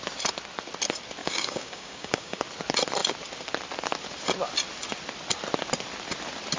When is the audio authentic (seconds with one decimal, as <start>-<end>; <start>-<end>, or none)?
0.0-1.2; 2.4-6.6